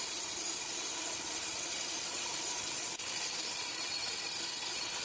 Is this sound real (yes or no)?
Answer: yes